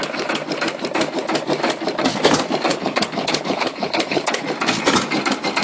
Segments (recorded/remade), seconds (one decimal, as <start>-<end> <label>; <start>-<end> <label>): 0.0-2.7 recorded; 2.7-4.4 remade; 4.4-5.6 recorded